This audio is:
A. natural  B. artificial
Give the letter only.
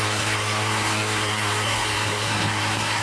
B